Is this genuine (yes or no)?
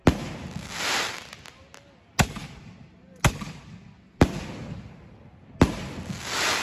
yes